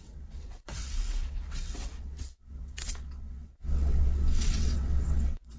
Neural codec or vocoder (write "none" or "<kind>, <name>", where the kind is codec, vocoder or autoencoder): vocoder, WaveNeXt